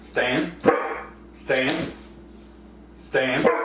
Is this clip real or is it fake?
real